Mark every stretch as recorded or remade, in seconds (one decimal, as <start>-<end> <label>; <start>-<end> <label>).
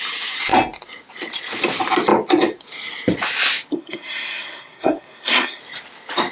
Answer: 0.0-3.7 recorded; 3.7-5.6 remade; 5.6-6.3 recorded